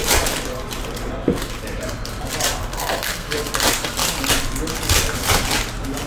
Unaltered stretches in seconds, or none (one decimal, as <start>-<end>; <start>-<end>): 0.0-2.7; 3.3-6.1